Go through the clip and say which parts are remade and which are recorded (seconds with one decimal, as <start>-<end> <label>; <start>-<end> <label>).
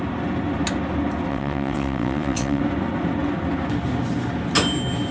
0.0-1.3 recorded; 1.3-2.6 remade; 2.6-5.1 recorded